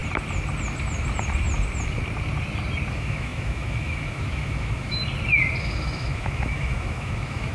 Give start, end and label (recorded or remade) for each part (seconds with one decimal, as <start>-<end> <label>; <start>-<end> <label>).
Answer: 0.0-2.9 recorded; 2.9-5.0 remade; 5.0-5.6 recorded; 5.6-7.5 remade